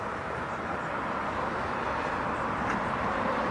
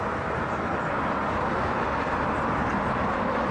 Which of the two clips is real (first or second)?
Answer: second